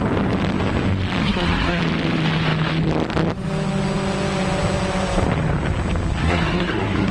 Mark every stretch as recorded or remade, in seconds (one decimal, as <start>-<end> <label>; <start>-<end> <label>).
0.0-1.2 recorded; 1.2-1.8 remade; 1.8-6.2 recorded; 6.2-7.1 remade